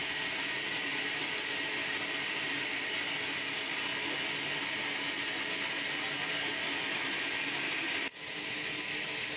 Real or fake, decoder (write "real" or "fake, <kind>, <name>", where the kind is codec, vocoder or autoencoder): real